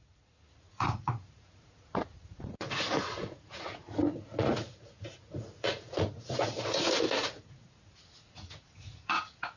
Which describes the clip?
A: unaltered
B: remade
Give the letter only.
B